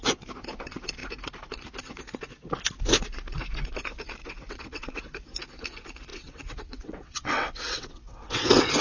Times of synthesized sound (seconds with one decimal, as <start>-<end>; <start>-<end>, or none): 4.2-5.0; 6.1-8.8